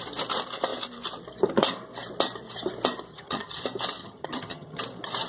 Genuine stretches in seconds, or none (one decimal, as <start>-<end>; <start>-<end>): 0.0-3.1; 3.6-4.0; 4.8-5.3